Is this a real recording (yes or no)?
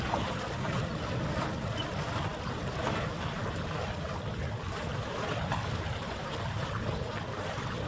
yes